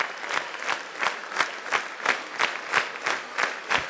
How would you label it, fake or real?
real